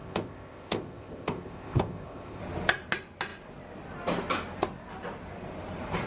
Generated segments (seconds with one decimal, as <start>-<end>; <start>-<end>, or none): 0.0-2.4

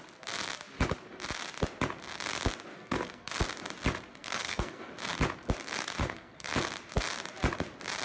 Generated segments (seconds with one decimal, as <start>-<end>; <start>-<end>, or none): 2.7-3.4; 4.1-4.9; 6.0-6.5

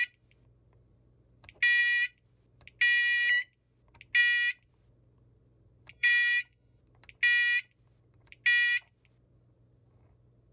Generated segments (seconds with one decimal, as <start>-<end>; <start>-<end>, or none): 5.9-6.8

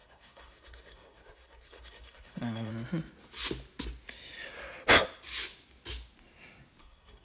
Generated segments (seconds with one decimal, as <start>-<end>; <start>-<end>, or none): 0.0-2.7; 6.8-7.2

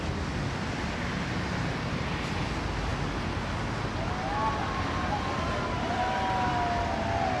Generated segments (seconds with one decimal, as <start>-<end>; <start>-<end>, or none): none